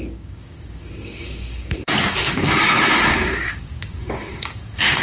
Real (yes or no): no